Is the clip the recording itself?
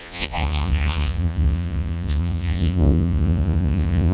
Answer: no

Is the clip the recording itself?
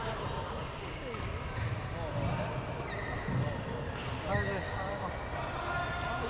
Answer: yes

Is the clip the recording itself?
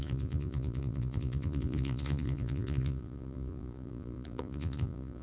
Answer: no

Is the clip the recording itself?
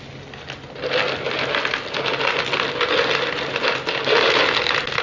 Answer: yes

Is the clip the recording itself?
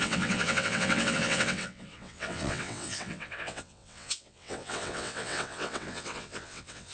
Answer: no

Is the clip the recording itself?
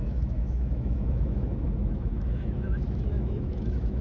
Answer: no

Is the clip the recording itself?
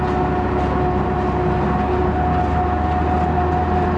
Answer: yes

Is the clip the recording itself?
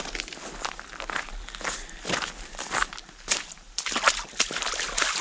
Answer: yes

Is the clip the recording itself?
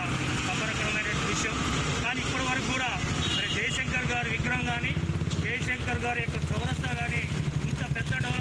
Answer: yes